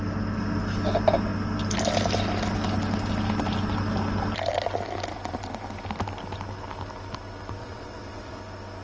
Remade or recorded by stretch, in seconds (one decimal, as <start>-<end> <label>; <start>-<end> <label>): 0.0-7.6 recorded; 7.6-8.4 remade; 8.4-8.8 recorded